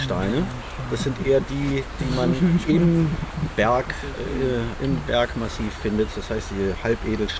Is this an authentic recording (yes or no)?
yes